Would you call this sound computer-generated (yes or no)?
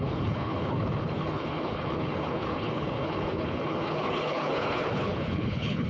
yes